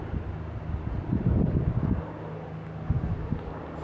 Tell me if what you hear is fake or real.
real